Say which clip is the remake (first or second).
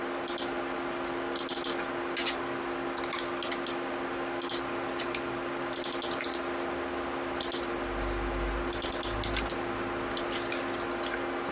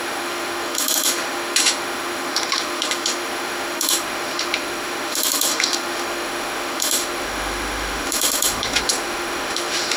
second